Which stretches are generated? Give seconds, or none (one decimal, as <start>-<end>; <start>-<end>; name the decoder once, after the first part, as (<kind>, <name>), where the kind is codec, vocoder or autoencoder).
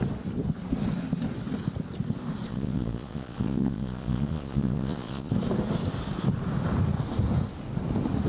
2.5-5.3 (vocoder, Vocos)